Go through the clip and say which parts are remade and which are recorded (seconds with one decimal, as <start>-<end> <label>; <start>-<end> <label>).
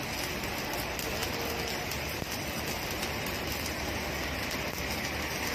0.0-5.5 recorded